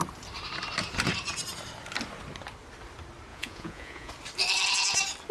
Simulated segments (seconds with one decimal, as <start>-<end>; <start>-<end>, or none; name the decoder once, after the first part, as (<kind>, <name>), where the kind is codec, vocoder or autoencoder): 3.3-4.1 (vocoder, Vocos)